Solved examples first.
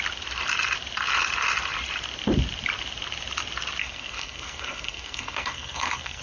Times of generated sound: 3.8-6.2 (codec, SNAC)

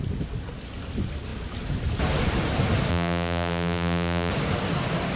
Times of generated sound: 2.9-4.3 (vocoder, BigVGAN v2)

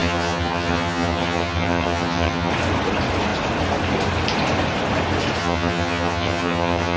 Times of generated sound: 0.0-2.5 (vocoder, HiFi-GAN); 5.4-7.0

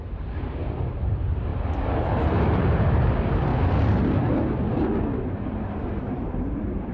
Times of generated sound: 0.0-1.5 (vocoder, BigVGAN v2); 2.9-3.5; 5.2-6.9